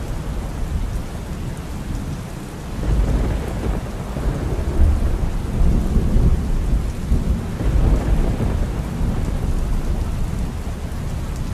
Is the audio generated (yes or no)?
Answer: no